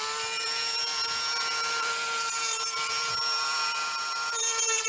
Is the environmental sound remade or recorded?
remade